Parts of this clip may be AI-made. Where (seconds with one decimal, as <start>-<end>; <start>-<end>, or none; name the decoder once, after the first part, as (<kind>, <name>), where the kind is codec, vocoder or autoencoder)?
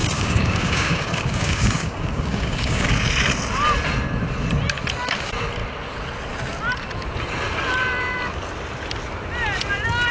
0.0-3.1 (codec, DAC)